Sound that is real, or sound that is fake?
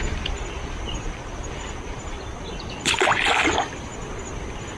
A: real